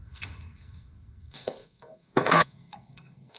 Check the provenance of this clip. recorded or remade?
remade